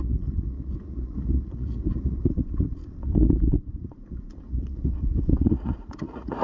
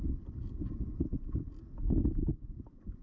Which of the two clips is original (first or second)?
second